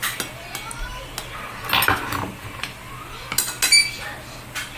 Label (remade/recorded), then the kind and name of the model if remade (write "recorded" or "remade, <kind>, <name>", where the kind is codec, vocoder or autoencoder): recorded